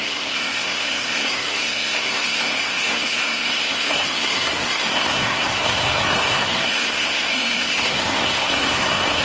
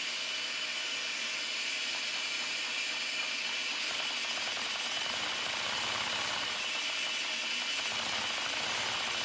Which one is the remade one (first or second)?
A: first